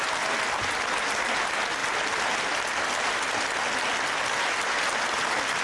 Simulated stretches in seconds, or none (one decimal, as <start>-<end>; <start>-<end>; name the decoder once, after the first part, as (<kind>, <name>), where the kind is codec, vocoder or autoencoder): none